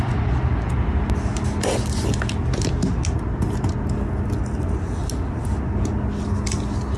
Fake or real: real